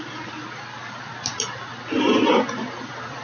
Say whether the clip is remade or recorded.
recorded